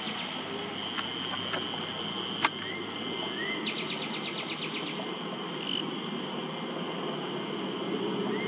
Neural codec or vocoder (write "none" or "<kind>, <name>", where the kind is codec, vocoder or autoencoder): none